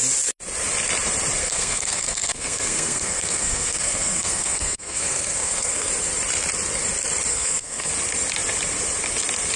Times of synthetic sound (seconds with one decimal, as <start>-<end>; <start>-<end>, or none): 1.4-5.9; 7.3-7.9